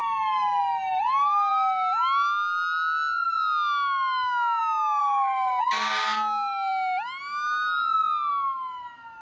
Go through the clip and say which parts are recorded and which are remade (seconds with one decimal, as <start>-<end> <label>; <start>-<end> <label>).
0.0-5.0 recorded; 5.0-5.6 remade; 5.6-9.2 recorded